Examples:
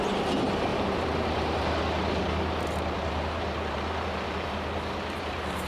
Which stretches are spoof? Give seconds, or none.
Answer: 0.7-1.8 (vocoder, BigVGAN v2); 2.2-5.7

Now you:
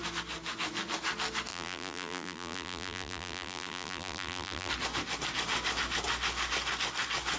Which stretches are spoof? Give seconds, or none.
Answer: 1.5-4.7 (vocoder, BigVGAN v2)

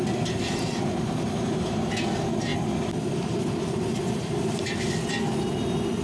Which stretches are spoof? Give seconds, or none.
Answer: 2.5-5.1 (vocoder, BigVGAN v2)

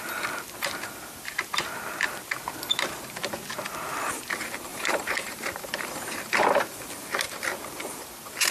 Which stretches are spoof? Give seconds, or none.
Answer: 4.7-6.9 (vocoder, BigVGAN v2)

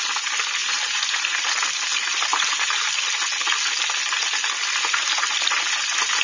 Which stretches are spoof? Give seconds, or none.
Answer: 0.6-1.4 (vocoder, BigVGAN v2); 2.3-2.8

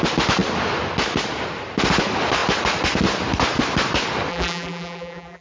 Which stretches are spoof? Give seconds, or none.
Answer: 4.3-5.4 (vocoder, BigVGAN v2)

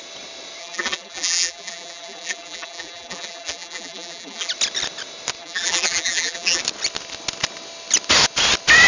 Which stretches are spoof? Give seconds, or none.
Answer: 0.6-4.5 (vocoder, BigVGAN v2); 5.4-6.6